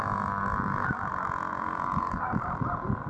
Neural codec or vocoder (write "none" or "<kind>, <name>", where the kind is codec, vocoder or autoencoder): none